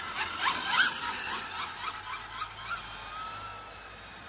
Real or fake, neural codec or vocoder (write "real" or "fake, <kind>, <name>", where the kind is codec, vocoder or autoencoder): real